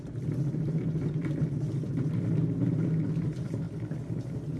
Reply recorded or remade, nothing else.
recorded